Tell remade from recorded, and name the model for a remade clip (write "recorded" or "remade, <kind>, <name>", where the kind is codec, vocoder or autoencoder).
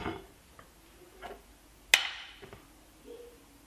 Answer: recorded